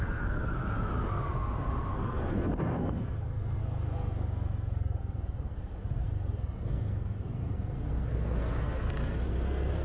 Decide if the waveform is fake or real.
fake